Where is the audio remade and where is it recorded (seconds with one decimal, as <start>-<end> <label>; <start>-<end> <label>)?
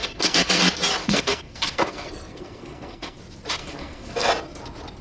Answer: 0.0-0.6 remade; 0.6-1.0 recorded; 1.0-3.2 remade; 3.2-3.6 recorded; 3.6-4.3 remade; 4.3-5.0 recorded